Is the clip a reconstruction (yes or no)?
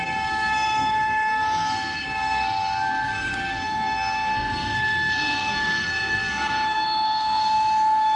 yes